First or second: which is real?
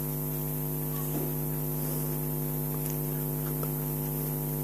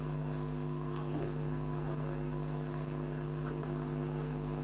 first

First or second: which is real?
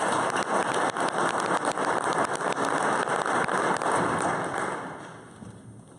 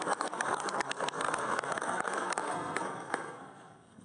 first